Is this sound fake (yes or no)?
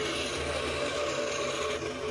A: no